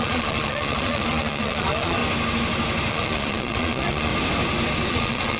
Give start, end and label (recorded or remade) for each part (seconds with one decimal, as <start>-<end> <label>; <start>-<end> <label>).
0.0-2.0 remade; 2.0-2.9 recorded; 2.9-4.1 remade; 4.1-4.9 recorded; 4.9-5.4 remade